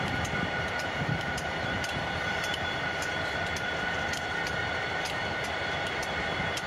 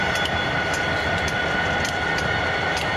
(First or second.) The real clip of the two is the second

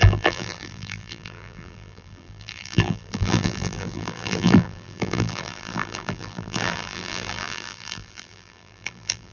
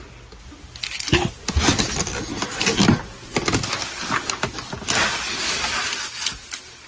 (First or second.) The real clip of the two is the second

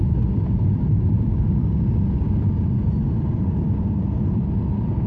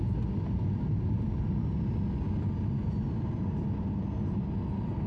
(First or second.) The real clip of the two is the second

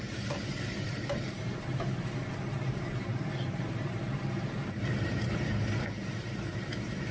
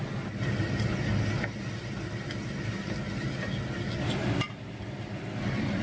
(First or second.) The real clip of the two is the second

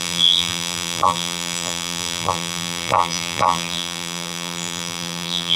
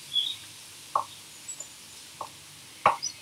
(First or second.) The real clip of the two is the second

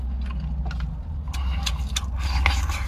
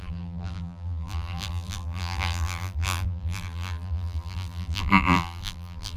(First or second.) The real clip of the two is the first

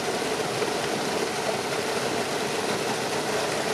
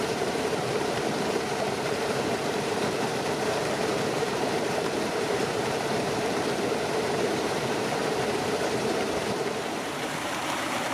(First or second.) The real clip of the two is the first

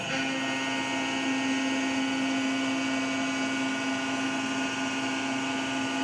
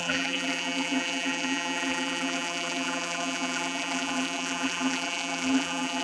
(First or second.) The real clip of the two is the first